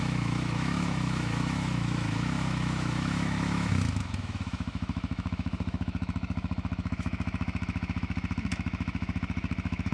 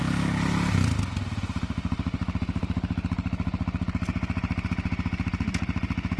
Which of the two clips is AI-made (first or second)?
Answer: first